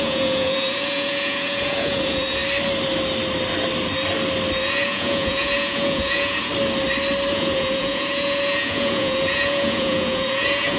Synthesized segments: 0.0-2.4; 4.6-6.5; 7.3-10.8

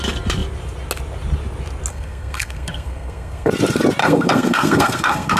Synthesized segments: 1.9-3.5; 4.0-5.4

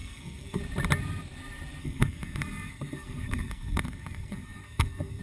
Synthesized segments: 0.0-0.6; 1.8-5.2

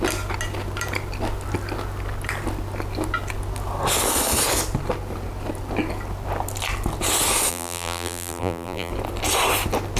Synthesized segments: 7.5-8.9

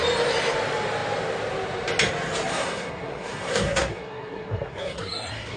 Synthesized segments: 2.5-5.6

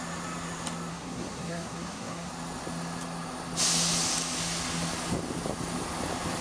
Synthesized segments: 0.9-2.3